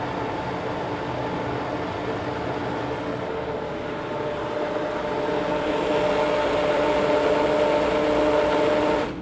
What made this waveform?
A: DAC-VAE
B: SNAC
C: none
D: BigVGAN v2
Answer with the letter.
C